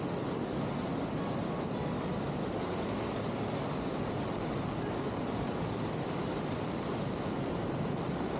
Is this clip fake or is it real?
real